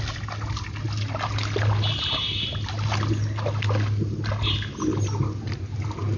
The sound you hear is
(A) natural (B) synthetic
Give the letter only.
A